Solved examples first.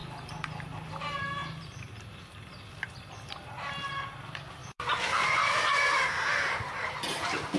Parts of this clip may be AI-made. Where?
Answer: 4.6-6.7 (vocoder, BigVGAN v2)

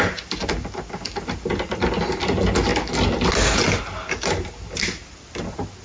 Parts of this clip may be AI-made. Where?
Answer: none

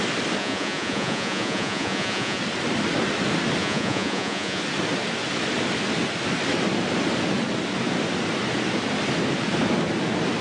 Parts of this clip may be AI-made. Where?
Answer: 0.4-2.4 (vocoder, Vocos); 3.6-4.6

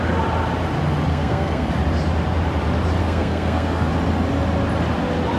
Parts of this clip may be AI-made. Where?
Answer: 1.1-1.7 (codec, SNAC); 3.0-3.9

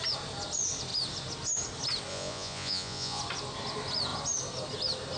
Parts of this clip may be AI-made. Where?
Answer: 2.1-3.2 (vocoder, Vocos)

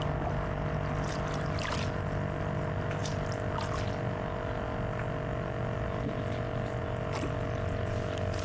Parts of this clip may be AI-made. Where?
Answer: none